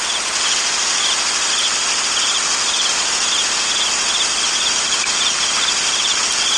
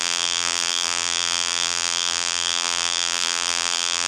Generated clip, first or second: second